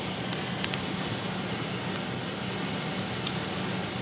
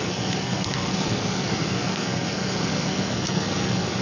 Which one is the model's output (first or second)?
second